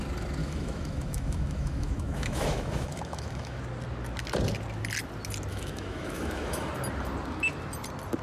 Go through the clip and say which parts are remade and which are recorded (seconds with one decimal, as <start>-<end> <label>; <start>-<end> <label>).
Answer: 0.0-0.4 recorded; 0.4-3.6 remade; 3.6-5.5 recorded; 5.5-6.7 remade; 6.7-8.2 recorded